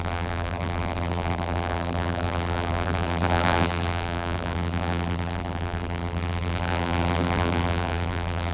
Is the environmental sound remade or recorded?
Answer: remade